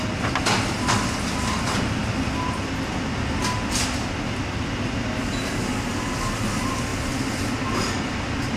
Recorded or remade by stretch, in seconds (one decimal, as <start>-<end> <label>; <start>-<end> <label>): 0.0-6.9 recorded; 6.9-8.6 remade